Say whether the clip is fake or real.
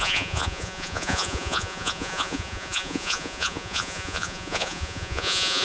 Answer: fake